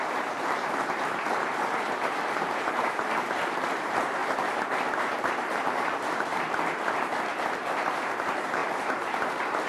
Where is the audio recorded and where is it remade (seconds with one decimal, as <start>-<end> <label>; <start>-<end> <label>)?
0.0-4.2 remade; 4.2-5.3 recorded; 5.3-6.3 remade; 6.3-7.8 recorded; 7.8-9.7 remade